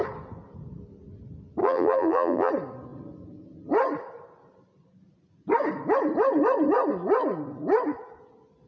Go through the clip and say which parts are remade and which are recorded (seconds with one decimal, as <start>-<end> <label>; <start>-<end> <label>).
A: 0.0-1.6 recorded; 1.6-2.5 remade; 2.5-8.7 recorded